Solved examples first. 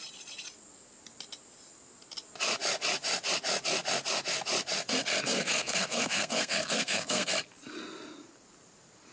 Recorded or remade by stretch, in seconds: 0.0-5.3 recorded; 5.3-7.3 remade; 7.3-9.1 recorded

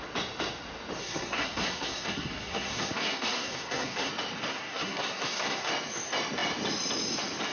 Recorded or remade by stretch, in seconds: 0.0-1.0 recorded; 1.0-4.1 remade; 4.1-4.5 recorded; 4.5-5.7 remade; 5.7-7.5 recorded

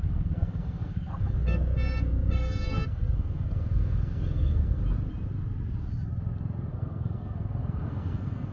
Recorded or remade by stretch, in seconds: 0.0-4.8 remade; 4.8-6.7 recorded; 6.7-8.5 remade

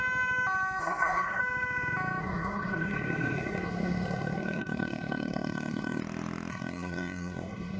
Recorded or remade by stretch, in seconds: 0.0-0.8 recorded; 0.8-1.4 remade; 1.4-2.2 recorded; 2.2-6.0 remade; 6.0-6.5 recorded; 6.5-7.8 remade

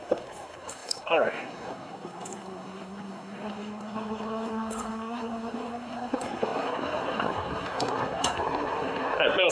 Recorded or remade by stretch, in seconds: 0.0-9.5 remade